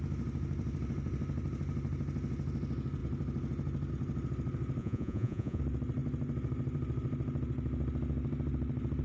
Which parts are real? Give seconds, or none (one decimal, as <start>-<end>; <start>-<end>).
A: 0.0-4.8; 5.6-9.0